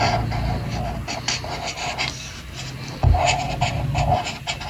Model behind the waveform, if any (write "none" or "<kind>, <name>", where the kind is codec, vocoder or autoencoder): none